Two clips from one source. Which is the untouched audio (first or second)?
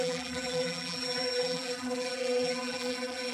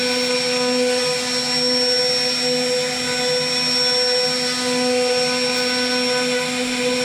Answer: second